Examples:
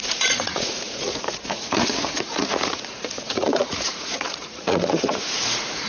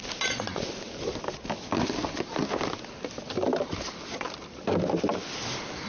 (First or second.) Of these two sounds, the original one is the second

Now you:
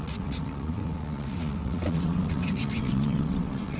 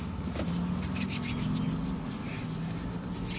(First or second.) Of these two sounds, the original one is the second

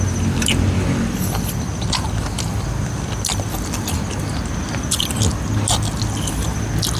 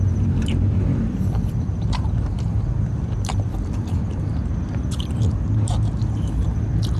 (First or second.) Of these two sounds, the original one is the first